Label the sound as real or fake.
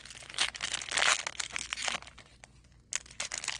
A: real